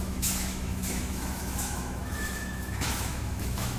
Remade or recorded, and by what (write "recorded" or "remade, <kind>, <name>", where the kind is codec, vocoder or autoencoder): remade, autoencoder, DAC-VAE